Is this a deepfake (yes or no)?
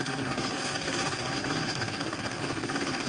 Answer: yes